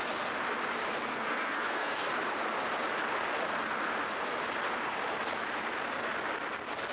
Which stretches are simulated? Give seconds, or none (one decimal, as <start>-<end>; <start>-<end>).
1.1-2.1